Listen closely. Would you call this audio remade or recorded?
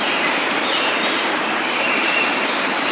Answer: remade